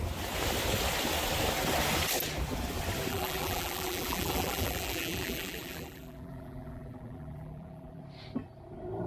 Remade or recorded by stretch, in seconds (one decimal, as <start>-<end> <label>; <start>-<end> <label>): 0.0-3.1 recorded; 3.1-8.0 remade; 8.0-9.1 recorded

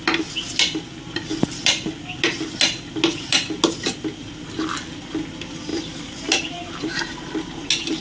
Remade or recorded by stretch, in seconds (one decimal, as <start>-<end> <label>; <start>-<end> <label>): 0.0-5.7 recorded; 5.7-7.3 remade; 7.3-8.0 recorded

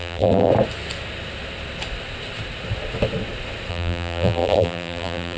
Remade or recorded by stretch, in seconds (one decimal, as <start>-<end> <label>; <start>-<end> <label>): 0.0-0.5 remade; 0.5-3.7 recorded; 3.7-5.4 remade

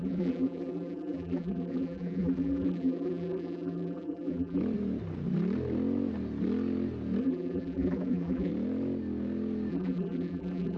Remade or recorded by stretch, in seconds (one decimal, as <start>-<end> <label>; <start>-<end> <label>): 0.0-4.6 remade; 4.6-7.2 recorded; 7.2-8.5 remade; 8.5-9.7 recorded; 9.7-10.8 remade

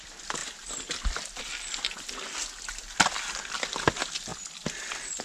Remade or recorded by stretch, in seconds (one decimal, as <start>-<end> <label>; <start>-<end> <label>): 0.0-5.2 recorded

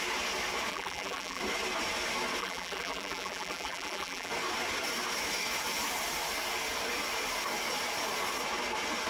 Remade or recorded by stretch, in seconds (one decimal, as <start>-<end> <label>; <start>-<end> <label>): 0.0-0.7 recorded; 0.7-1.4 remade; 1.4-2.4 recorded; 2.4-4.3 remade; 4.3-9.1 recorded

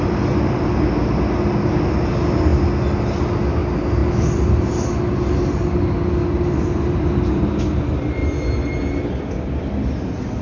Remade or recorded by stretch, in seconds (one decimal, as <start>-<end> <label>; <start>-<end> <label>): 0.0-10.4 recorded